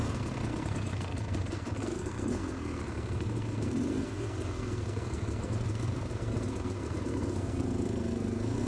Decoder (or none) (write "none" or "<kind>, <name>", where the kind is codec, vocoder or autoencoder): codec, SNAC